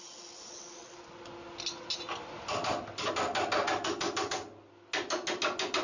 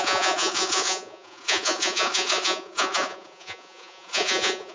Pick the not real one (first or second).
second